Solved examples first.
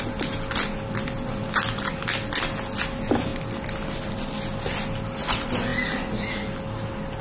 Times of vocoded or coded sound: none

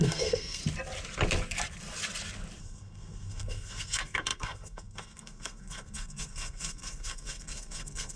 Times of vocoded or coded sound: 0.0-0.6; 2.6-8.2